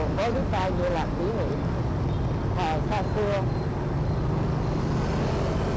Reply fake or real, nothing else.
real